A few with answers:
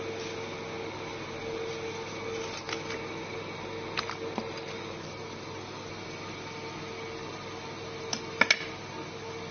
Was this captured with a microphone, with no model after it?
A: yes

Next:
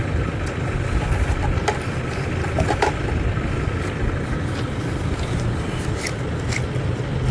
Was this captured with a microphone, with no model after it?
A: yes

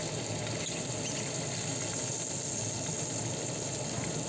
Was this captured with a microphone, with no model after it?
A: yes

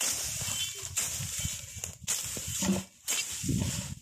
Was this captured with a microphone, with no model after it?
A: yes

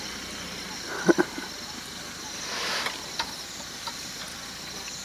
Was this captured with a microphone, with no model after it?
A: yes